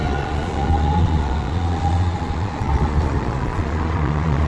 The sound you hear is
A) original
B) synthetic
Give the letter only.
B